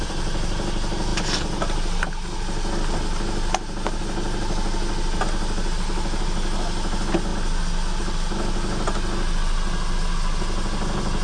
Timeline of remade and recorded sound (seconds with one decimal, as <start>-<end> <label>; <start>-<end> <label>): 0.0-11.2 recorded